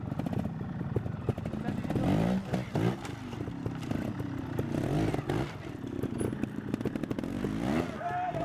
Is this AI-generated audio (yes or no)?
no